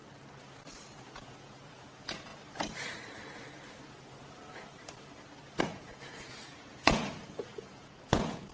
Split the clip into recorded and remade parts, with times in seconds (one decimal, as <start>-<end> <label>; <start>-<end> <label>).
0.0-0.8 recorded; 0.8-2.3 remade; 2.3-5.6 recorded; 5.6-8.5 remade